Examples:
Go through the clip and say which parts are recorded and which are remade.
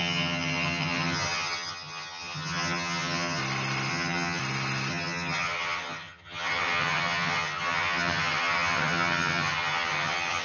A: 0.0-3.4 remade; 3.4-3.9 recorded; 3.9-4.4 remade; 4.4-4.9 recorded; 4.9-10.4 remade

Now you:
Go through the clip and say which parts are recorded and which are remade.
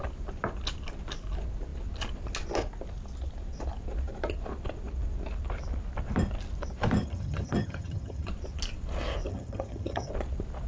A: 0.0-7.0 recorded; 7.0-8.3 remade; 8.3-9.3 recorded; 9.3-10.1 remade; 10.1-10.7 recorded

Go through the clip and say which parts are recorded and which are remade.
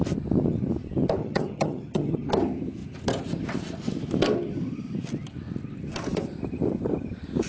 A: 0.0-1.2 recorded; 1.2-2.3 remade; 2.3-7.5 recorded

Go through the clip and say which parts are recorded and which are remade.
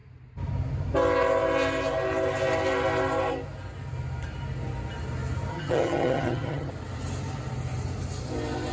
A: 0.0-5.5 recorded; 5.5-6.7 remade; 6.7-8.7 recorded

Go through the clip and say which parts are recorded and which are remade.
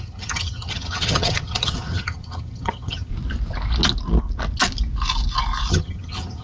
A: 0.0-3.1 remade; 3.1-5.7 recorded; 5.7-6.4 remade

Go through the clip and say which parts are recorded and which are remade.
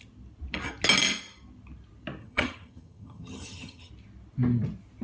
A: 0.0-2.2 recorded; 2.2-3.9 remade; 3.9-5.0 recorded